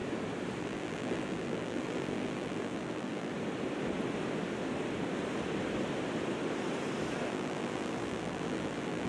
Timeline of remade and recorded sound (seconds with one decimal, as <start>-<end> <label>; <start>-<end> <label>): 0.0-0.6 recorded; 0.6-3.3 remade; 3.3-7.3 recorded; 7.3-9.1 remade